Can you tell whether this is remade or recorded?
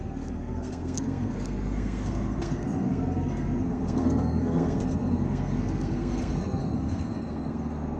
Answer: remade